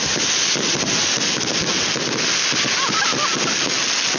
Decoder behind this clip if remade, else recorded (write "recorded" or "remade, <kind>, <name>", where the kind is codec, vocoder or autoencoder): recorded